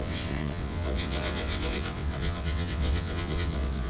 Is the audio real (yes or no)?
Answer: no